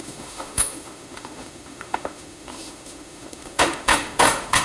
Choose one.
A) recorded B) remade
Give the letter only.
B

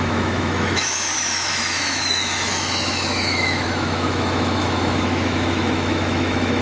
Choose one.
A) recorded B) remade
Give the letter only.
B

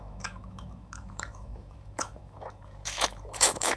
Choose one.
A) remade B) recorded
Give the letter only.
A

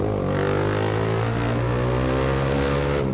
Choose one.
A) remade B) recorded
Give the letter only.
B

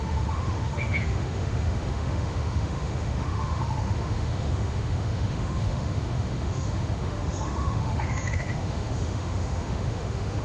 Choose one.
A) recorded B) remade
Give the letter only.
B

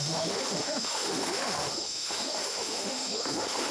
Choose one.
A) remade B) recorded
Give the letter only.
A